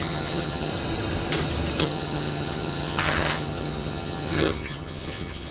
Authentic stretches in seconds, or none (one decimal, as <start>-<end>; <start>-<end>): 0.7-1.8